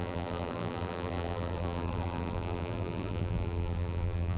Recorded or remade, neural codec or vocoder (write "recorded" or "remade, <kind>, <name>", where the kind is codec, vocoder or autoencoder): remade, vocoder, BigVGAN v2